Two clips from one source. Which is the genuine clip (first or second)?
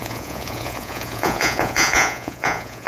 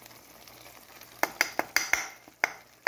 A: second